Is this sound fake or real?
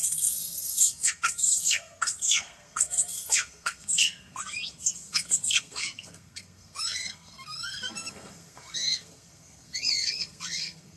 fake